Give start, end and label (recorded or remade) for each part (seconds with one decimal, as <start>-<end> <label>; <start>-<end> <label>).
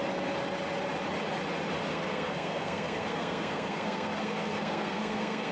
0.0-1.9 recorded; 1.9-5.5 remade